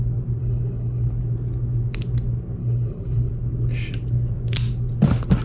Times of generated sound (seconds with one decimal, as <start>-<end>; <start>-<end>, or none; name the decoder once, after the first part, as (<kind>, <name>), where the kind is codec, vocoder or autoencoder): 0.4-1.1 (codec, HILCodec); 2.6-3.3